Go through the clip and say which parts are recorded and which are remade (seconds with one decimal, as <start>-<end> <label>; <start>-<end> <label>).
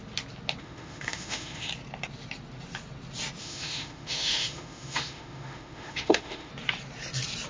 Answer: 0.0-0.6 recorded; 0.6-1.7 remade; 1.7-3.4 recorded; 3.4-6.5 remade; 6.5-7.5 recorded